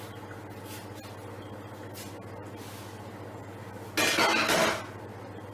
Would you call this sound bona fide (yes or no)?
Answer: yes